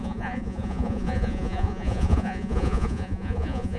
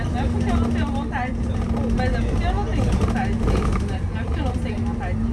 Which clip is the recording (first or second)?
second